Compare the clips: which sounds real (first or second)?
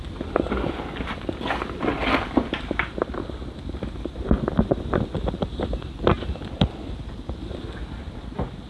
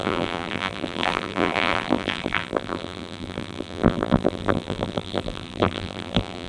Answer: first